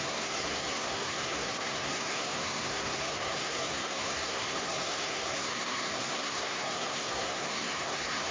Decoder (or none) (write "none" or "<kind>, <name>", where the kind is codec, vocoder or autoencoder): codec, SNAC